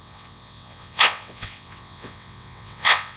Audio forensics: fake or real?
fake